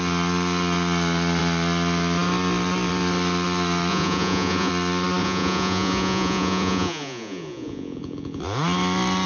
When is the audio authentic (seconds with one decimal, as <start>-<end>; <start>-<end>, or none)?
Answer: 0.0-3.9; 4.7-5.2; 8.4-9.3